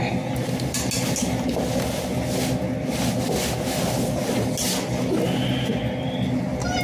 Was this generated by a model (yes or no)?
no